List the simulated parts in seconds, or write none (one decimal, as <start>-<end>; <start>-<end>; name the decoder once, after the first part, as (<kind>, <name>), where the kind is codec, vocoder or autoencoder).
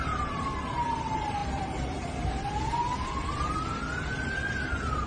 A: 0.0-5.1 (vocoder, BigVGAN v2)